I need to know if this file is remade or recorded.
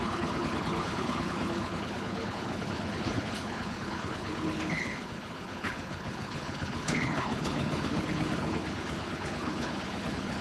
remade